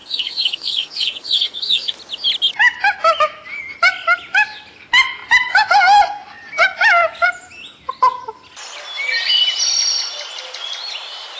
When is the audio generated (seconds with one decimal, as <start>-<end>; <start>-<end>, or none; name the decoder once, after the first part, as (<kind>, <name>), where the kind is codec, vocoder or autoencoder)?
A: 0.0-1.9 (codec, SNAC)